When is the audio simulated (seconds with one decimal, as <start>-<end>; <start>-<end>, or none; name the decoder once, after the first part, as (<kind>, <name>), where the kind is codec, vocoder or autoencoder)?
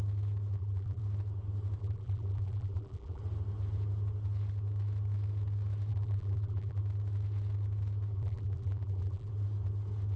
0.5-1.0 (vocoder, BigVGAN v2); 1.8-3.2; 5.9-6.8; 8.1-9.3